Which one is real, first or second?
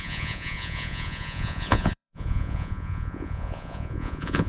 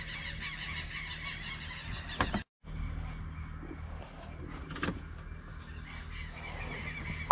second